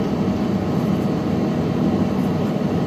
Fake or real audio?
real